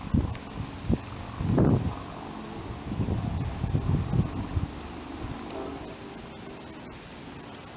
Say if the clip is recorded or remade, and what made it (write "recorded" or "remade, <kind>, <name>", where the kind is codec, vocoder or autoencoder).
recorded